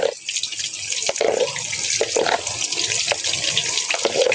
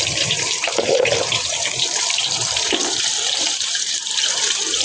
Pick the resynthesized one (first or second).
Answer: second